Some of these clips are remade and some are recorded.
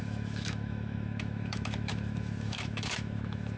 remade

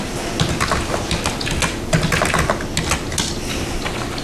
recorded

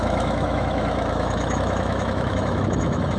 remade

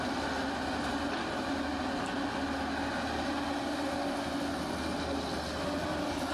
recorded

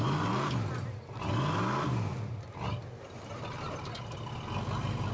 recorded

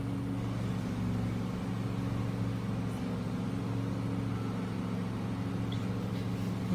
recorded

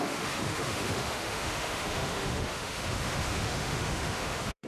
remade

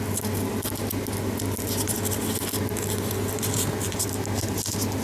recorded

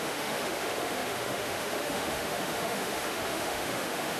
remade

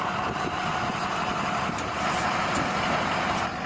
recorded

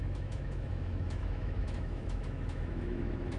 remade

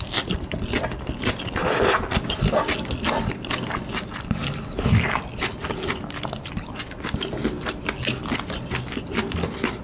recorded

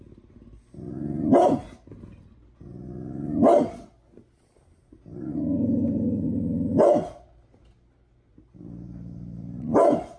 recorded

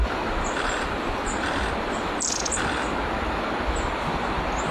recorded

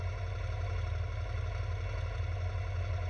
recorded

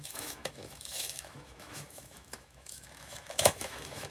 remade